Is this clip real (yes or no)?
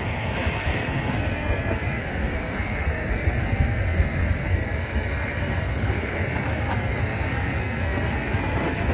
no